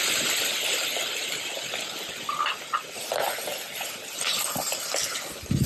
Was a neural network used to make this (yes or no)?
no